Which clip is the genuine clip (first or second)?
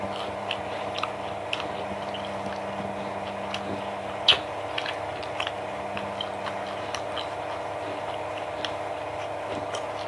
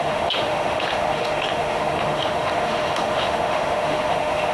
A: first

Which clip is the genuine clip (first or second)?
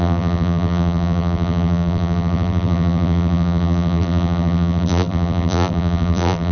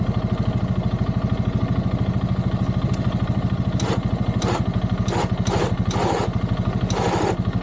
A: second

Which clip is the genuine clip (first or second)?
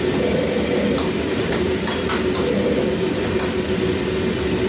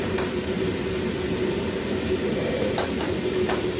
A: first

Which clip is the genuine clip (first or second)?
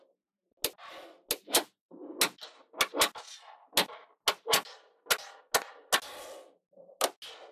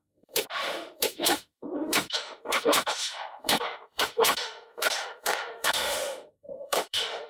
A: first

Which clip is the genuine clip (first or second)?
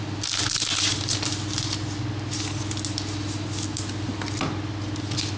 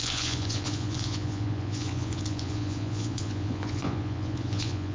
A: first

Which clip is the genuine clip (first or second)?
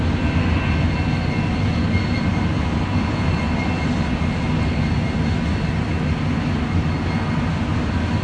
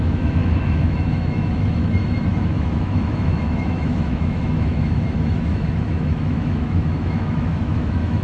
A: first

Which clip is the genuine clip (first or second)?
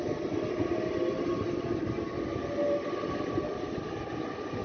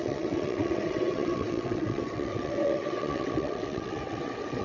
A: first